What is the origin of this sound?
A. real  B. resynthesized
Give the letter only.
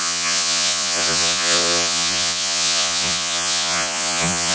B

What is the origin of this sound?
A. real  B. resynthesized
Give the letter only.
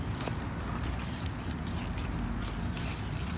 A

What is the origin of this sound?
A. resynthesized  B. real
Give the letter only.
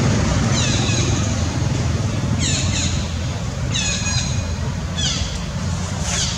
B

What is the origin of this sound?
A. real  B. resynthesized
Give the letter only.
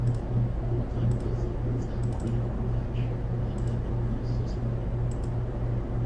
A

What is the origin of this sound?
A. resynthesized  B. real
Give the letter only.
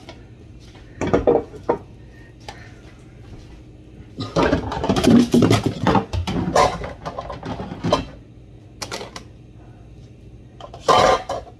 B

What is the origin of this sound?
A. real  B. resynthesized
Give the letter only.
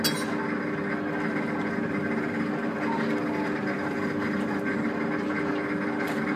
A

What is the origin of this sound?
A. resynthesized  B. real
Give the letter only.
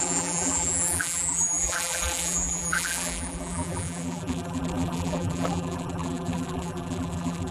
A